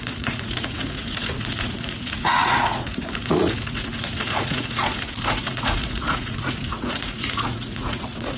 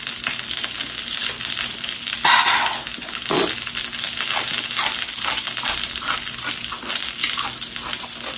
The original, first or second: second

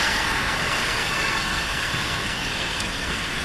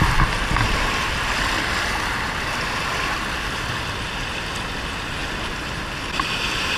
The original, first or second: second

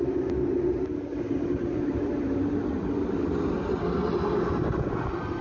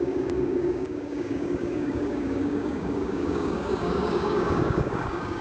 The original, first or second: first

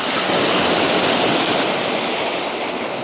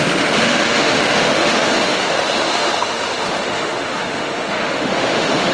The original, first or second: first